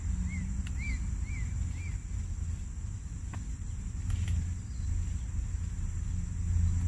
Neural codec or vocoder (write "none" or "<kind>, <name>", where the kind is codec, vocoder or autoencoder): none